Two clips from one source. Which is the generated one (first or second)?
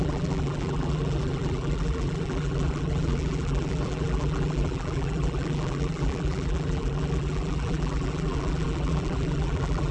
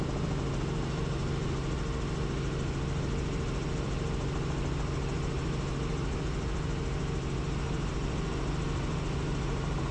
first